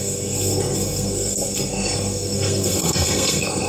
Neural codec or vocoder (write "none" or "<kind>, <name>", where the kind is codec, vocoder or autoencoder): codec, SNAC